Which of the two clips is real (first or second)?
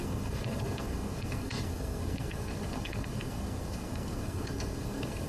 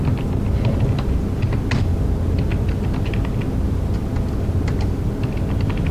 second